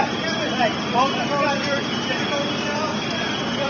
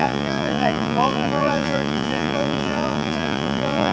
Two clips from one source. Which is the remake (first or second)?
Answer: second